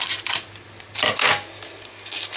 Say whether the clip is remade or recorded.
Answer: recorded